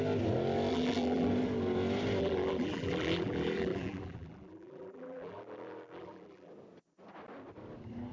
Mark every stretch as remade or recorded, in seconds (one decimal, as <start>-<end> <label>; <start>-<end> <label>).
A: 0.0-0.7 recorded; 0.7-1.3 remade; 1.3-2.2 recorded; 2.2-6.5 remade; 6.5-8.1 recorded